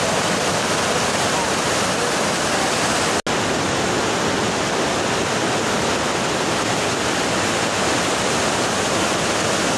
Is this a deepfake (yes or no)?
no